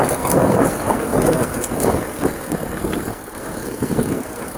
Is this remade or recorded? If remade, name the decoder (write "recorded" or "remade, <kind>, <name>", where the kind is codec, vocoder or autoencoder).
remade, codec, SNAC